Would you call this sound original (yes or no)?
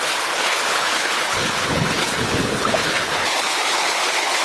no